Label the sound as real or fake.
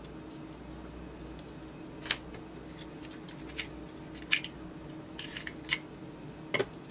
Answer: real